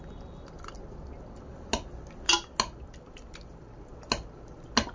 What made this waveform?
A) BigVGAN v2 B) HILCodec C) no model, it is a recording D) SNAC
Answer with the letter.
C